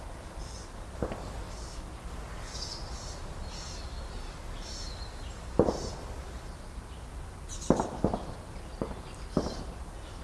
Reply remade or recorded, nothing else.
recorded